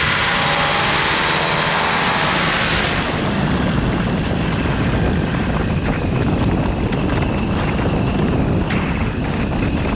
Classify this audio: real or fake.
real